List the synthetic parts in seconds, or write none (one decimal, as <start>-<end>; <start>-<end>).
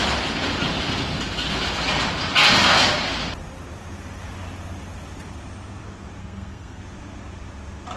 6.2-6.8